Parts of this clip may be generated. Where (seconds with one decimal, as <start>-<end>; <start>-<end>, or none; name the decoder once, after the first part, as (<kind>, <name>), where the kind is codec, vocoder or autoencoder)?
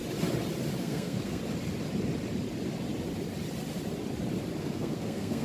0.8-1.4 (codec, SNAC); 4.6-5.4